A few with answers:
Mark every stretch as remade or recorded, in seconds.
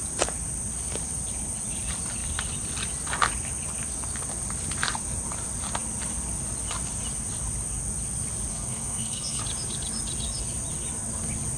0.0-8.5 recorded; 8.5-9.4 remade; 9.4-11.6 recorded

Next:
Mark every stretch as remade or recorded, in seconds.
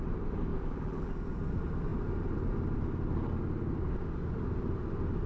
0.0-0.5 recorded; 0.5-1.1 remade; 1.1-5.3 recorded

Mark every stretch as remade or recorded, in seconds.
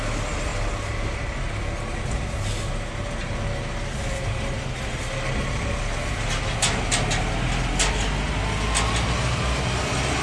0.0-10.2 recorded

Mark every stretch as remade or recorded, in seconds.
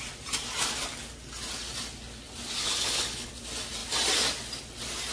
0.0-2.6 recorded; 2.6-3.3 remade; 3.3-5.1 recorded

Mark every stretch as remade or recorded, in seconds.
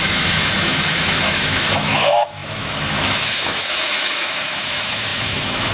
0.0-5.7 remade